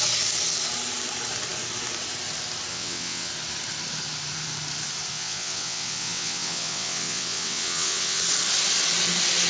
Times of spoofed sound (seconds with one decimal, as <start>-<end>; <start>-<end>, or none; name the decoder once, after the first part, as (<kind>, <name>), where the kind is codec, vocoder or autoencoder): 2.7-3.3 (vocoder, WaveNeXt); 5.1-8.2